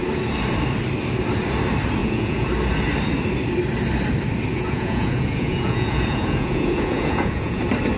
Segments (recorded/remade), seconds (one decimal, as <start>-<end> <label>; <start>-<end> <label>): 0.0-2.0 recorded; 2.0-2.5 remade; 2.5-4.5 recorded; 4.5-7.6 remade; 7.6-8.0 recorded